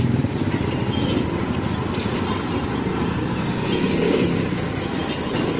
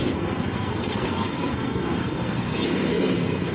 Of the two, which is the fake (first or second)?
second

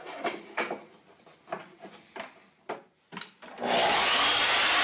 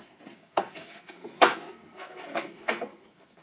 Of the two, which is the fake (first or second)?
second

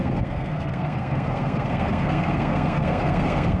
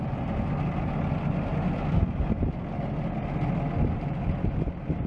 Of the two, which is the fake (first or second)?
first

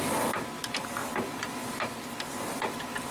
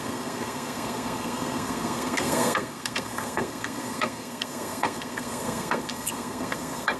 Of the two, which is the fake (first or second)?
second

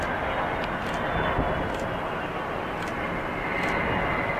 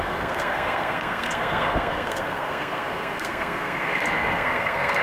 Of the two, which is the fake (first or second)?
second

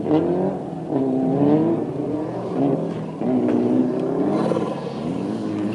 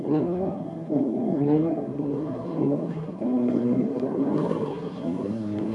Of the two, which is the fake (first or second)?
second